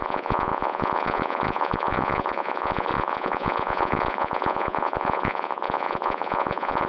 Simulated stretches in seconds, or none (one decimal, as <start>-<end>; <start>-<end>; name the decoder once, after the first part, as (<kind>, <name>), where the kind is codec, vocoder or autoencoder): 0.0-6.9 (vocoder, Vocos)